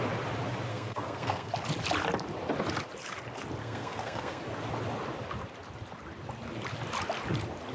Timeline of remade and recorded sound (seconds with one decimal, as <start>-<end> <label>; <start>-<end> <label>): 0.0-0.7 recorded; 0.7-1.5 remade; 1.5-3.6 recorded; 3.6-4.4 remade; 4.4-7.7 recorded